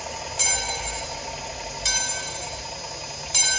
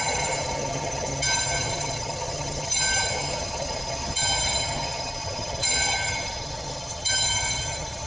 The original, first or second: first